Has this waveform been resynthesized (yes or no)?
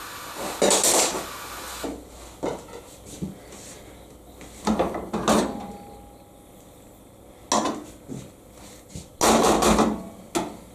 no